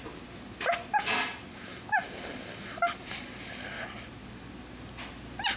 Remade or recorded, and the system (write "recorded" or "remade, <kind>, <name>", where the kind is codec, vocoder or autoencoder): recorded